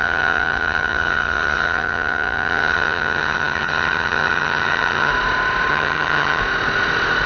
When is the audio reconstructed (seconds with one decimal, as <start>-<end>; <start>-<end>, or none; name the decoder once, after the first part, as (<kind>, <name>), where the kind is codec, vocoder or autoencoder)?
0.0-5.1 (vocoder, HiFi-GAN); 5.7-6.4